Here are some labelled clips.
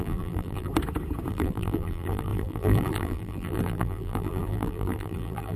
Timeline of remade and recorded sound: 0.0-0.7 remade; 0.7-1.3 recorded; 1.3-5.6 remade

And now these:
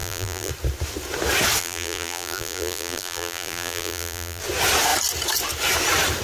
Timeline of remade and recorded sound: 0.0-0.5 remade; 0.5-1.6 recorded; 1.6-4.4 remade; 4.4-6.2 recorded

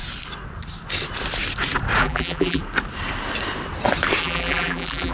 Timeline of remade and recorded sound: 0.0-2.0 recorded; 2.0-2.6 remade; 2.6-4.2 recorded; 4.2-5.1 remade